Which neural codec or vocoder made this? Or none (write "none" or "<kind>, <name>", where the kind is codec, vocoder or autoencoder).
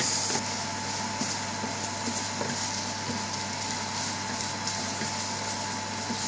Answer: none